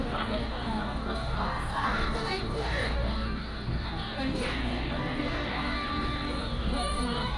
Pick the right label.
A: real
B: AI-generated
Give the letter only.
B